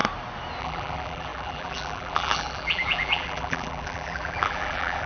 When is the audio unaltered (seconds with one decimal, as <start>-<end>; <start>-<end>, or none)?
0.0-0.6